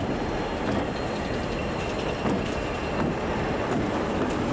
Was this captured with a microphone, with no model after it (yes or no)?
yes